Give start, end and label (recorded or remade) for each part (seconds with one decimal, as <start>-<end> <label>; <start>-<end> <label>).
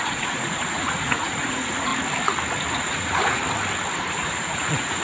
0.0-1.9 remade; 1.9-2.7 recorded; 2.7-3.4 remade; 3.4-4.1 recorded; 4.1-5.0 remade